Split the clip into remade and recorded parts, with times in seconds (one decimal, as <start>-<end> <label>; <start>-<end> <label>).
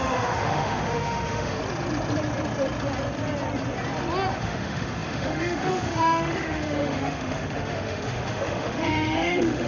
0.0-1.6 remade; 1.6-4.4 recorded; 4.4-9.7 remade